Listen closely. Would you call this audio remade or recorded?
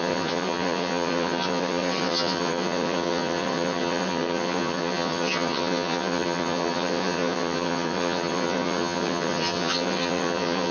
remade